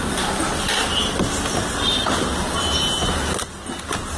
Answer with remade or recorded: recorded